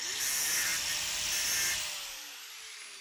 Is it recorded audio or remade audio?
recorded